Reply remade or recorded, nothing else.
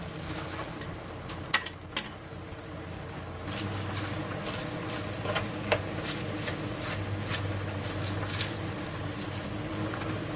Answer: recorded